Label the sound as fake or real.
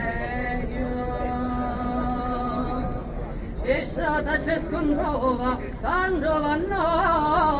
real